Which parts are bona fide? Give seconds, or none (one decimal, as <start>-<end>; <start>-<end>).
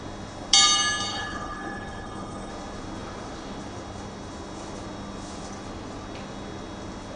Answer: 0.0-1.1; 2.5-7.2